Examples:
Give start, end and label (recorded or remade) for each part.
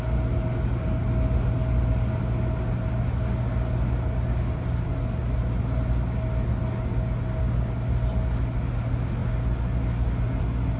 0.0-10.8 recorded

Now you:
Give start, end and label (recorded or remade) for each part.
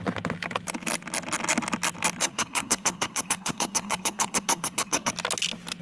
0.0-2.2 recorded; 2.2-5.1 remade; 5.1-5.8 recorded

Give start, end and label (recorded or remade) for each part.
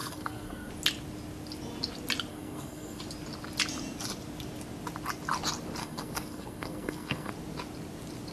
0.0-0.7 remade; 0.7-2.3 recorded; 2.3-3.0 remade; 3.0-5.8 recorded; 5.8-7.3 remade; 7.3-8.3 recorded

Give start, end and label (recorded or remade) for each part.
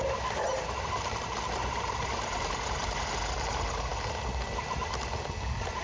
0.0-5.8 recorded